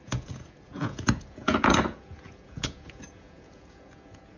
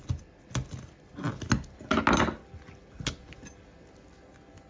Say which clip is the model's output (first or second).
first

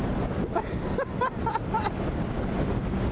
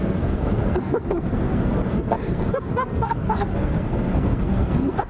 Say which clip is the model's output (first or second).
second